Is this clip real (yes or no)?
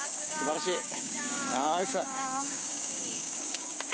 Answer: no